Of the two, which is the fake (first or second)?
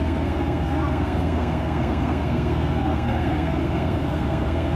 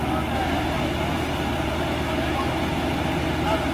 first